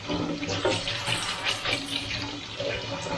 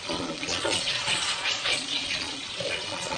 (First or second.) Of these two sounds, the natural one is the first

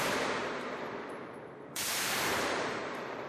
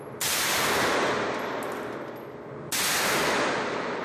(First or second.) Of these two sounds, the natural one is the second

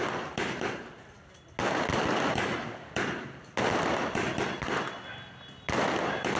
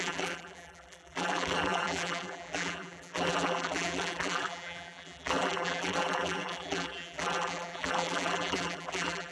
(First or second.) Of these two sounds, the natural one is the first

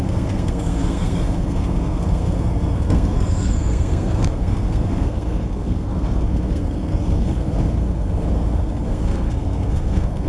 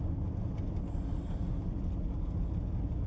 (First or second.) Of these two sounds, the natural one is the second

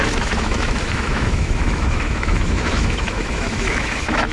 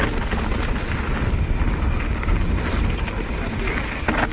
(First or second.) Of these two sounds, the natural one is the second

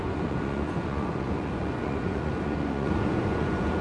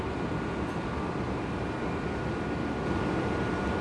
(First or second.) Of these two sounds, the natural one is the second